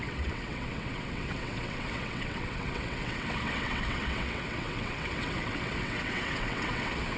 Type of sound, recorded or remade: remade